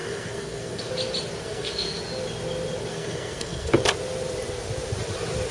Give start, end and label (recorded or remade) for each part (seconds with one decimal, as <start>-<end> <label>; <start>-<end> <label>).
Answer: 0.0-0.9 remade; 0.9-1.4 recorded; 1.4-2.0 remade; 2.0-2.9 recorded; 2.9-3.7 remade; 3.7-5.5 recorded